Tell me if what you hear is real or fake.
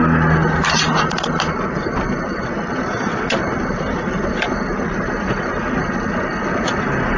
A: real